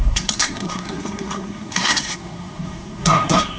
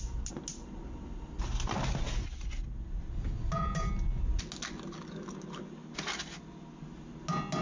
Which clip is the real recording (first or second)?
second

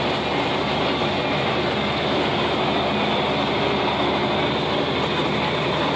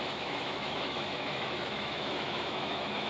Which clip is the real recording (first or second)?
first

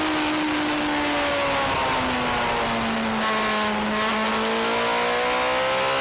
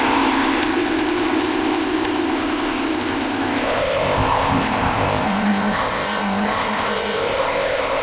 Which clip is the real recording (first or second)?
first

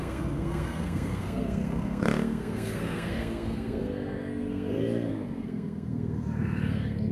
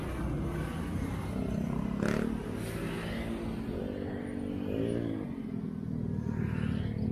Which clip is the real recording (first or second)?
second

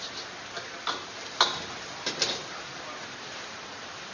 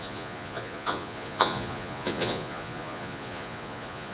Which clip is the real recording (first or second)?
first